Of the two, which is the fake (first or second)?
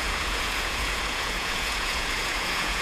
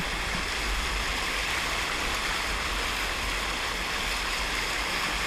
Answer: first